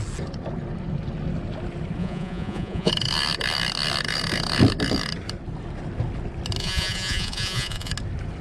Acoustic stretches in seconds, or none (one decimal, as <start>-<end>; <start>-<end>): 0.0-2.0; 2.9-6.6; 7.9-8.4